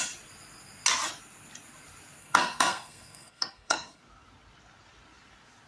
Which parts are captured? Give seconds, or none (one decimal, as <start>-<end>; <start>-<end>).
0.0-2.2; 4.0-5.7